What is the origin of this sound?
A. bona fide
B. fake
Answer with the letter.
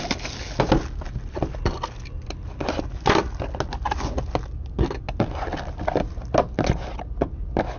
A